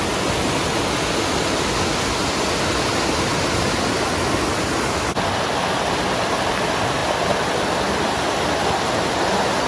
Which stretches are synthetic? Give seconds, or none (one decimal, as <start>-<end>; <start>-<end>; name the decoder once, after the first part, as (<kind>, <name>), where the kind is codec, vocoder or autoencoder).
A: none